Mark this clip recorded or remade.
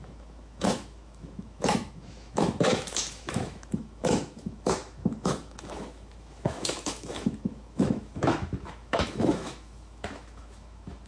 remade